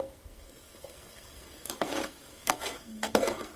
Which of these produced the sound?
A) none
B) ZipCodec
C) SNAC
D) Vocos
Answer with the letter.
C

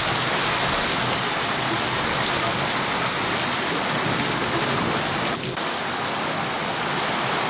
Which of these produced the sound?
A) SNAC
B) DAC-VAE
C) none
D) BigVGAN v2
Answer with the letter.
C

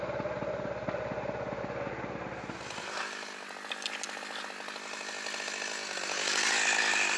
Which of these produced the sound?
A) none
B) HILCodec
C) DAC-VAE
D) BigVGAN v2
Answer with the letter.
A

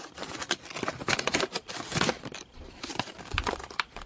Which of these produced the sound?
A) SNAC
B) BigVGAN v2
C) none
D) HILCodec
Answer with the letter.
C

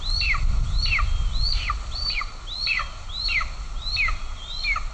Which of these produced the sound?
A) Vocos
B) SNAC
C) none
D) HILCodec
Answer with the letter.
C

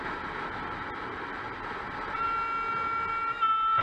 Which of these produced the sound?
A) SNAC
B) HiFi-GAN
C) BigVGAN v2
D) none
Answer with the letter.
D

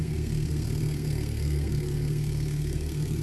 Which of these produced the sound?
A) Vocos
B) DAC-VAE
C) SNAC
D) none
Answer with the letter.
C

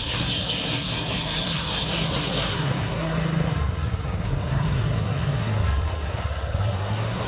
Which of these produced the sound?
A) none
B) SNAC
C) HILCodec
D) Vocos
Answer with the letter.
B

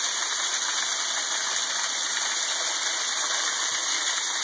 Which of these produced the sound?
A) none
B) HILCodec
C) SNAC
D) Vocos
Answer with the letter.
A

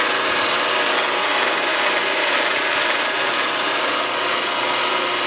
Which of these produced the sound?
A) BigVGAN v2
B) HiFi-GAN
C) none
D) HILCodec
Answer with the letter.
C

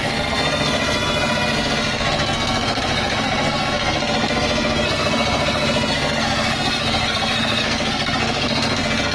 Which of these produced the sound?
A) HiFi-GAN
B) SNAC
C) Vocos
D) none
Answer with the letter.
B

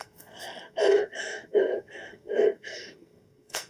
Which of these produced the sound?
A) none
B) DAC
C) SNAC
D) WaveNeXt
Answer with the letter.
C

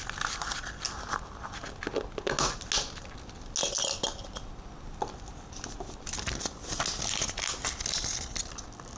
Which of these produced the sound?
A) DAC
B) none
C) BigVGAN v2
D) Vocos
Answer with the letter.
B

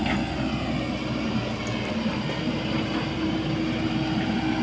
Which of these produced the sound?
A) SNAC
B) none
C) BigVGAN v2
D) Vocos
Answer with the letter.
B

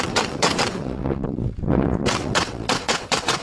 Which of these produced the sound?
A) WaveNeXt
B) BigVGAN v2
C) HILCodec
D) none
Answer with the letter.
A